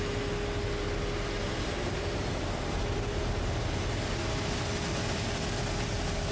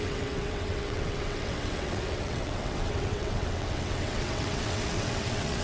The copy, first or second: second